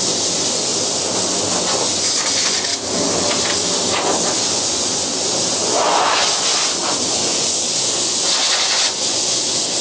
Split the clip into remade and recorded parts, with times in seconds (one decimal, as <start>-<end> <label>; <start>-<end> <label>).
0.0-0.7 remade; 0.7-1.6 recorded; 1.6-2.7 remade; 2.7-4.5 recorded; 4.5-9.8 remade